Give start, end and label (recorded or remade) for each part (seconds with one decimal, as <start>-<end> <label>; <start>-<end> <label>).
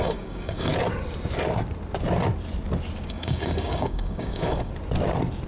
0.0-0.7 remade; 0.7-3.1 recorded; 3.1-4.7 remade; 4.7-5.5 recorded